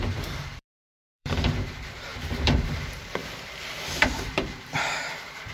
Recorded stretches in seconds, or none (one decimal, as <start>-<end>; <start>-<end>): 3.2-4.0